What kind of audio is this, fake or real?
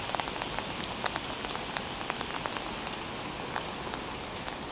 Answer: real